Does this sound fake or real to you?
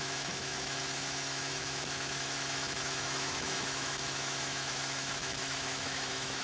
fake